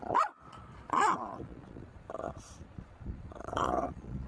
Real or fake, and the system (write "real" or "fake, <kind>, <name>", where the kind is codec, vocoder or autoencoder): fake, vocoder, Vocos